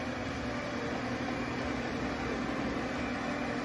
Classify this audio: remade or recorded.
recorded